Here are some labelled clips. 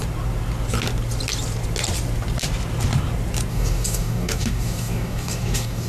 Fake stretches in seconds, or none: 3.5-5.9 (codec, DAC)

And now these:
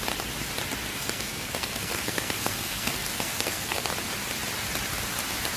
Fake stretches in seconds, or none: 0.9-3.9 (codec, SNAC)

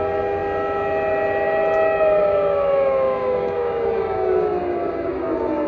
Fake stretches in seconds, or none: 2.2-5.7 (codec, DAC)